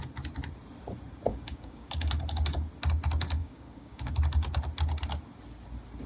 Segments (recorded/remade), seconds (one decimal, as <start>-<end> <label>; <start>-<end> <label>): 0.0-1.3 recorded; 1.3-2.1 remade; 2.1-3.4 recorded; 3.4-4.1 remade; 4.1-6.1 recorded